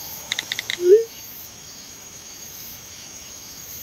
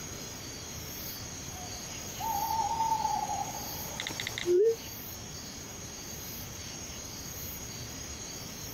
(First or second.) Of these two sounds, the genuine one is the second